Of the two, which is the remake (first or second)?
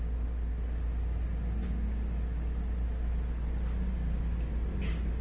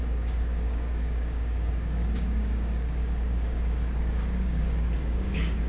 second